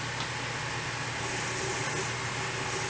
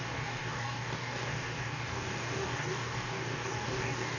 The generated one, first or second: second